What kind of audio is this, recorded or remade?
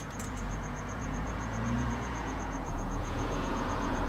remade